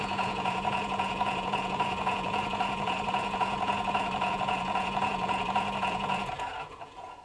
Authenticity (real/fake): fake